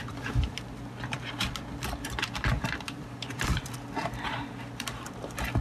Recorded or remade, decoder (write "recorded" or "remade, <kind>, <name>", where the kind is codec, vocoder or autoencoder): remade, vocoder, BigVGAN v2